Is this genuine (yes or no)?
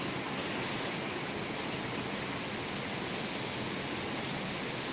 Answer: yes